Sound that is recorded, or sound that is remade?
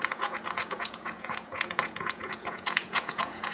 remade